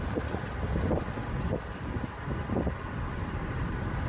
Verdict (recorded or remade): recorded